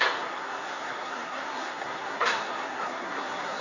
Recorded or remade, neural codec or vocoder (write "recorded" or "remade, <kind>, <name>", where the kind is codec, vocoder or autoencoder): remade, codec, SNAC